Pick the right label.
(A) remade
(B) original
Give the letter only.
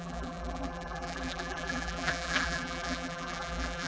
A